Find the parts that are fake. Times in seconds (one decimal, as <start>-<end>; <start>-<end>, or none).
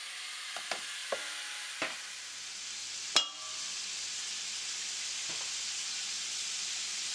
none